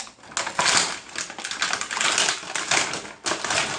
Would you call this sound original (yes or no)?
yes